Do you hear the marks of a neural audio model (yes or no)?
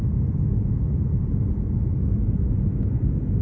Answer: yes